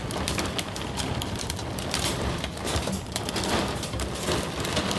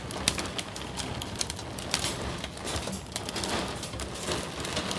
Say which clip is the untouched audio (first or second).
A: second